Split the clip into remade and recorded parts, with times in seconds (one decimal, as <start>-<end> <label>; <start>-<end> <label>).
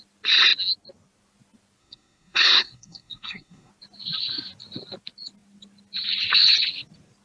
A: 0.0-1.8 recorded; 1.8-3.7 remade; 3.7-7.2 recorded